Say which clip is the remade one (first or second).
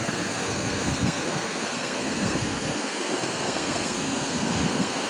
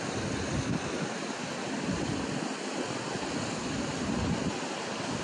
first